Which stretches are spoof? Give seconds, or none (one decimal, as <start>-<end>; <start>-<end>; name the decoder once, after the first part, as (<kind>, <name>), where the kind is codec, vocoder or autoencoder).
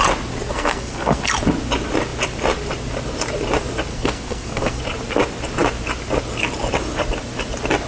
0.5-1.2 (codec, SNAC); 3.9-4.8